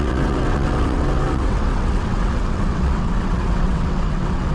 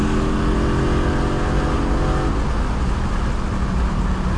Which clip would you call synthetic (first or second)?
first